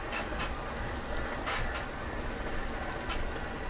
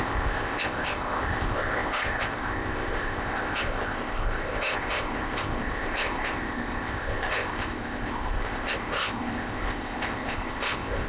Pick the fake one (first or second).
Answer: second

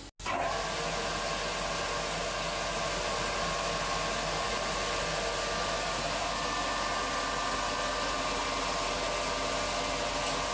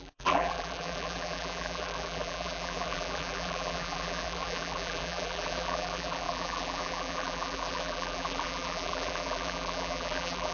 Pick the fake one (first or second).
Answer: second